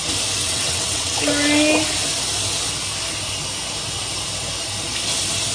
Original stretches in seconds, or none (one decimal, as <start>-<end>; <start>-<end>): 0.0-0.4; 1.2-5.5